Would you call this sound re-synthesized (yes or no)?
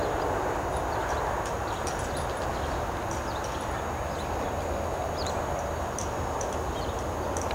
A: no